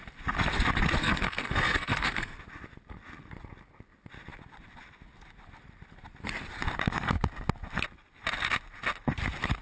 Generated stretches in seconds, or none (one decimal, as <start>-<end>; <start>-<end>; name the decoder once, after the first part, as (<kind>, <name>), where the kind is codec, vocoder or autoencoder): 1.0-2.4 (codec, SNAC)